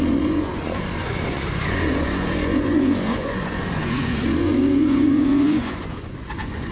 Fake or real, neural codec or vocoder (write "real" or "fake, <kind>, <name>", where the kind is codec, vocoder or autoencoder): fake, vocoder, Vocos